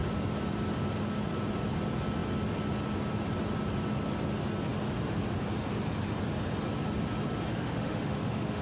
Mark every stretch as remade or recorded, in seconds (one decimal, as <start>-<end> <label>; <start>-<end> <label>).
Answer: 0.0-7.5 recorded; 7.5-8.6 remade